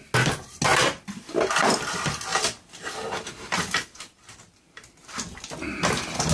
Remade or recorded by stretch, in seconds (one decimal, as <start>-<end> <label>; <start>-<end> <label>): 0.0-6.3 recorded